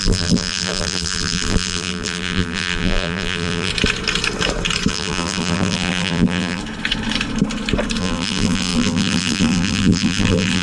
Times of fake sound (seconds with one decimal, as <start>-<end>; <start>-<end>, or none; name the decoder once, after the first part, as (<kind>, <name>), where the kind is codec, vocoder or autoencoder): 0.0-3.7 (vocoder, BigVGAN v2); 4.9-6.6; 8.0-10.6